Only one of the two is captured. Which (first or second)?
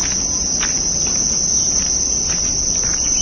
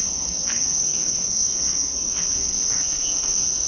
first